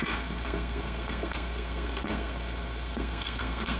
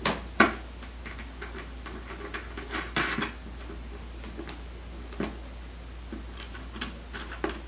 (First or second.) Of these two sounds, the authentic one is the second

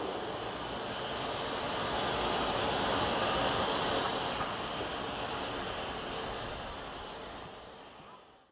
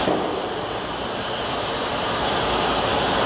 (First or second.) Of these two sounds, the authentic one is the first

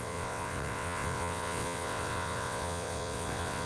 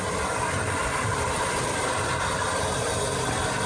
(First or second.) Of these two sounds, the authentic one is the second